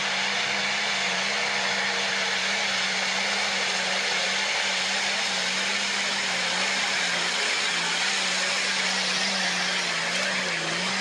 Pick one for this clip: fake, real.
real